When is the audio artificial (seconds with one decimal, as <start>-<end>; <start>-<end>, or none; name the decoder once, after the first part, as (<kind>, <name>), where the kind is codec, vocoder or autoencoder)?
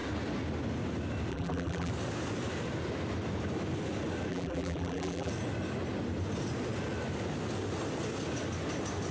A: 1.3-1.9 (vocoder, BigVGAN v2); 4.3-5.3